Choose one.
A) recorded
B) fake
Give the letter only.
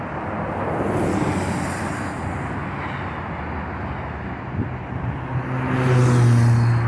A